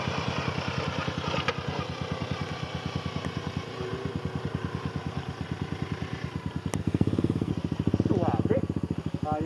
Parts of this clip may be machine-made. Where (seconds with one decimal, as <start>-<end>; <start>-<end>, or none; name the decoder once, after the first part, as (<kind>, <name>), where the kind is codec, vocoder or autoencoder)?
6.8-7.5 (codec, SNAC)